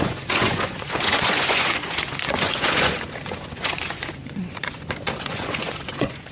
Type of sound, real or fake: fake